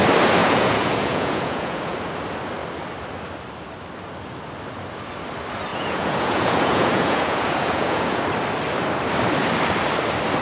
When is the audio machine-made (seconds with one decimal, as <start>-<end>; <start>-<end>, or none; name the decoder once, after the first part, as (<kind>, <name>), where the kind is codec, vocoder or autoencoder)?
0.4-1.9 (vocoder, Vocos); 5.7-8.2